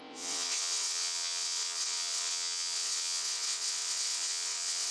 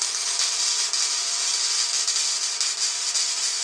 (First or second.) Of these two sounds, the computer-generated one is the first